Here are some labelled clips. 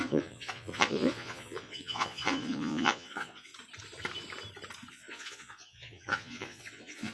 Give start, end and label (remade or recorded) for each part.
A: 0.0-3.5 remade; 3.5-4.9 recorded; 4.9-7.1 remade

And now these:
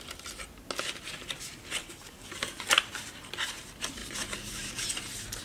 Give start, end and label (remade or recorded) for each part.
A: 0.0-1.8 recorded; 1.8-2.3 remade; 2.3-5.4 recorded

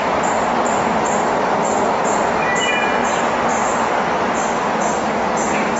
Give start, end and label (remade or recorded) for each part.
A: 0.0-5.8 recorded

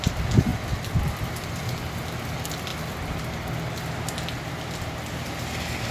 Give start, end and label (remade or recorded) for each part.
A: 0.0-5.9 recorded

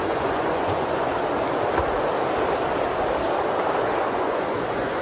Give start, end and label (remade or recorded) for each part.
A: 0.0-1.1 remade; 1.1-4.1 recorded; 4.1-5.0 remade

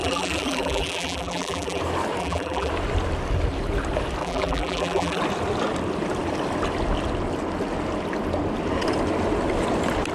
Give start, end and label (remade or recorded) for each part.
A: 0.0-1.8 remade; 1.8-2.2 recorded; 2.2-2.7 remade; 2.7-4.2 recorded; 4.2-5.2 remade; 5.2-10.1 recorded

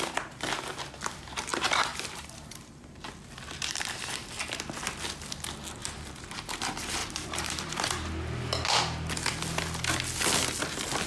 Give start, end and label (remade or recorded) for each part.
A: 0.0-1.5 recorded; 1.5-4.1 remade; 4.1-5.8 recorded; 5.8-6.5 remade; 6.5-11.1 recorded